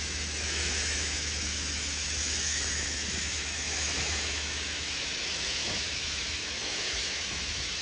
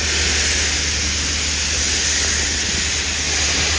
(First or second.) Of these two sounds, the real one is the second